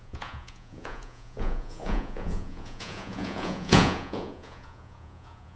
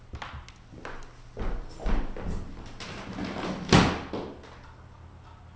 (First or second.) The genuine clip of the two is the second